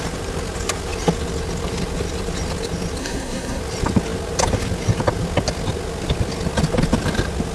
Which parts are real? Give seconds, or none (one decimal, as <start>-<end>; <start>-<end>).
0.0-3.0; 3.6-7.5

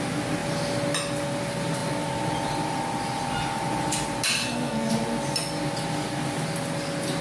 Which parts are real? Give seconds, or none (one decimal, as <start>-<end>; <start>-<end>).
0.0-4.4; 4.9-7.2

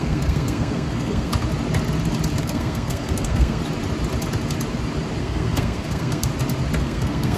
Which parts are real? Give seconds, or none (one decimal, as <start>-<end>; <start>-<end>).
1.3-2.4; 3.6-5.2; 6.3-6.8

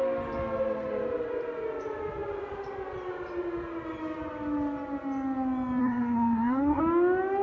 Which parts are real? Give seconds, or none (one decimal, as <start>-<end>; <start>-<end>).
0.0-5.8; 6.8-7.4

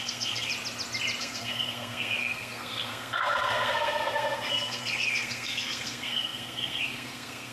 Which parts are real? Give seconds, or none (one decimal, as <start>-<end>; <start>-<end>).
0.5-1.2

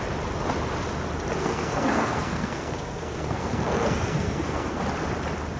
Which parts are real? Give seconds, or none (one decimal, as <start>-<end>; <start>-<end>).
0.0-1.4; 4.8-5.6